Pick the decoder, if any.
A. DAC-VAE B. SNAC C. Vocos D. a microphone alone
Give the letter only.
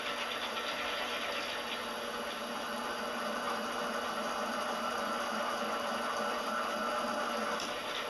D